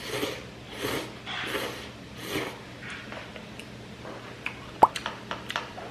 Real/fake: real